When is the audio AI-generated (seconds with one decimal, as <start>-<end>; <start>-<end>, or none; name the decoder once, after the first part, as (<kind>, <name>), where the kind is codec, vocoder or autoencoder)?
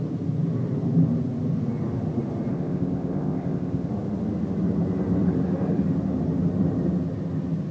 2.5-3.9 (codec, ZipCodec)